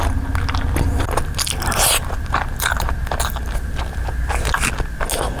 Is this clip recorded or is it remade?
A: recorded